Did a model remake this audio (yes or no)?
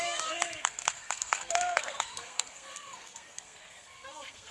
yes